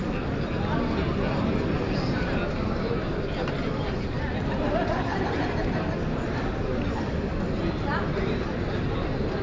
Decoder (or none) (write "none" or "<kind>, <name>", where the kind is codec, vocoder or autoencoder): none